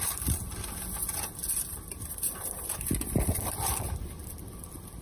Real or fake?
real